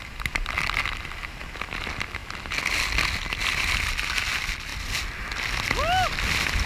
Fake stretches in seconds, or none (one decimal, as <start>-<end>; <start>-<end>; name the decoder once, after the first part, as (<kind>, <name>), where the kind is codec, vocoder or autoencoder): none